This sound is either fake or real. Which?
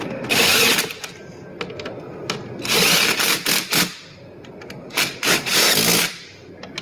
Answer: real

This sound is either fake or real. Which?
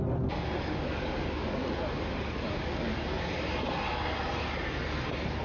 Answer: real